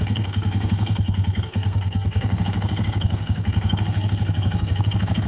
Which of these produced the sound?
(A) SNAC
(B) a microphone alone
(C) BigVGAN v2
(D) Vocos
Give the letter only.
A